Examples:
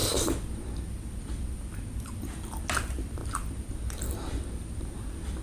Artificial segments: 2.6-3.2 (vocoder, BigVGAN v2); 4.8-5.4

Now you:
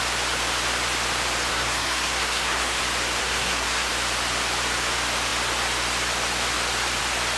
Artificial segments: 1.5-2.8 (codec, SNAC); 3.2-3.9